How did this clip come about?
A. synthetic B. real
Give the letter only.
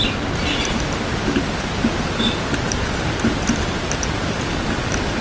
B